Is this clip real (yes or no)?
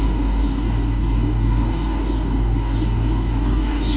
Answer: no